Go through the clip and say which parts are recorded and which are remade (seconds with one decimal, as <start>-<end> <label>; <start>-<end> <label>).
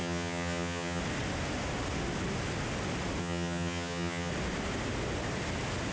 0.0-1.0 remade; 1.0-3.2 recorded; 3.2-4.3 remade; 4.3-5.9 recorded